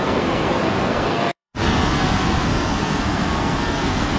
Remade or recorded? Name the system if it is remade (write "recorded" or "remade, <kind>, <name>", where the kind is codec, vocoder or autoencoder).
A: remade, codec, SNAC